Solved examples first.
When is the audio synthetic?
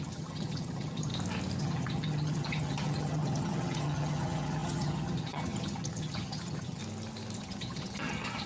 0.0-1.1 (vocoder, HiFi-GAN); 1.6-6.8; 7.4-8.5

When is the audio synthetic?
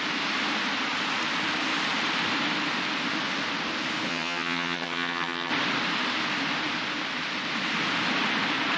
4.1-5.5 (vocoder, HiFi-GAN)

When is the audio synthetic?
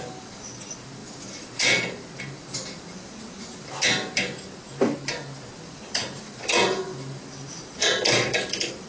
none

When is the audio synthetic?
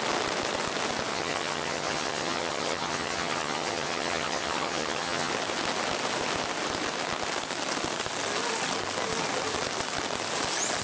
1.1-5.3 (vocoder, HiFi-GAN)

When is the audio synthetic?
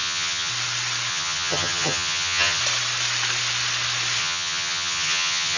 0.0-0.5 (vocoder, HiFi-GAN); 1.1-2.6; 4.2-5.6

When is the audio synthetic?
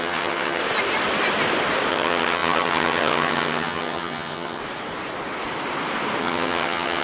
0.0-0.6 (vocoder, HiFi-GAN); 1.9-4.6; 6.2-7.0